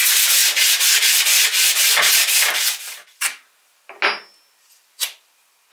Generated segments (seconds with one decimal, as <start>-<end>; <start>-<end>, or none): none